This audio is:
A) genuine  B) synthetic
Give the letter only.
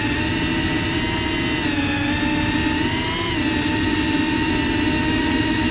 A